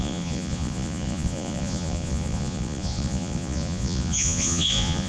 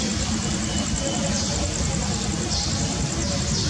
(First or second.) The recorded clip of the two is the second